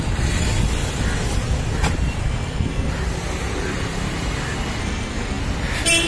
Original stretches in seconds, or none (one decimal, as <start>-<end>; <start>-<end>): 0.0-2.2; 2.9-4.8; 5.4-6.1